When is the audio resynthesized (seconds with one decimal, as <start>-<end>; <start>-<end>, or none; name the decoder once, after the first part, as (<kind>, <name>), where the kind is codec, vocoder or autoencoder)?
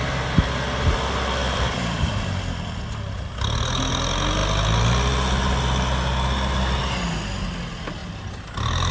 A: 1.4-2.8 (vocoder, BigVGAN v2)